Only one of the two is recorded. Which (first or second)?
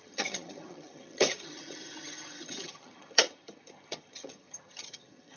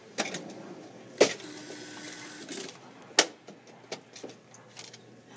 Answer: second